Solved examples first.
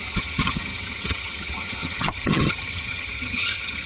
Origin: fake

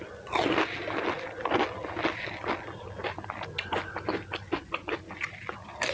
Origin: real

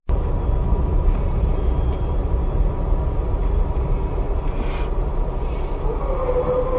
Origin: real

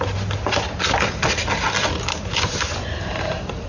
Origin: real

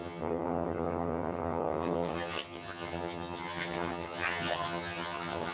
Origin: fake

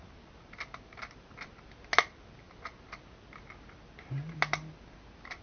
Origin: real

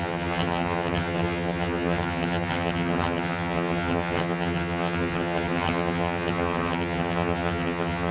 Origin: fake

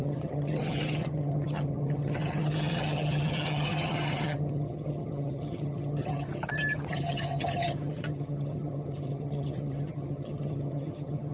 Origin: fake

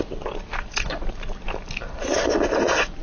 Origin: real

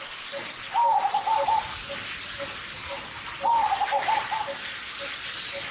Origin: real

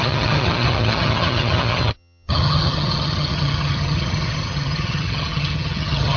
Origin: fake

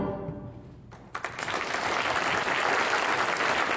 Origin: real